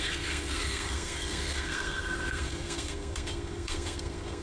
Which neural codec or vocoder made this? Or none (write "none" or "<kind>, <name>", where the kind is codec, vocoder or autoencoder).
codec, SNAC